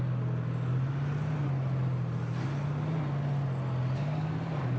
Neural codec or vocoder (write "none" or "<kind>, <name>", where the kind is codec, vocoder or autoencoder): none